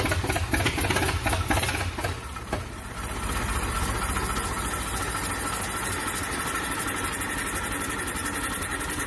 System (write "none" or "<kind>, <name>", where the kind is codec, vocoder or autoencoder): none